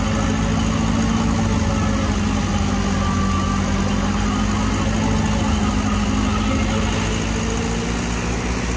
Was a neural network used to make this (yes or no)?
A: no